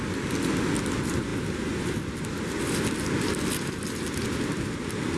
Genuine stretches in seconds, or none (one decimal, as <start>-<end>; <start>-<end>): 0.0-5.2

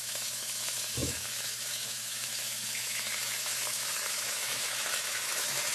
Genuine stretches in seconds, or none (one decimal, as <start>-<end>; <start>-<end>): none